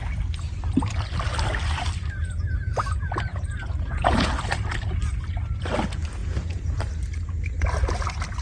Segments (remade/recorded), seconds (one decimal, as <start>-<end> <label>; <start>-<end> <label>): 0.0-3.3 recorded; 3.3-4.3 remade; 4.3-6.2 recorded; 6.2-6.8 remade; 6.8-8.4 recorded